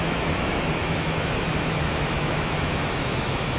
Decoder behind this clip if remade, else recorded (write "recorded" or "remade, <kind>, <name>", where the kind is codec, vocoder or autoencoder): remade, autoencoder, DAC-VAE